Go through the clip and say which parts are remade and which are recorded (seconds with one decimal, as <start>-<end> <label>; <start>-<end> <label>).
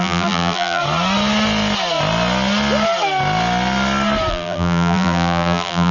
0.0-0.8 remade; 0.8-4.3 recorded; 4.3-5.9 remade